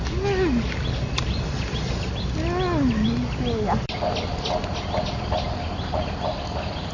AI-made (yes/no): no